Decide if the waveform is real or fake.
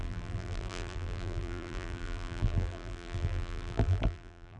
fake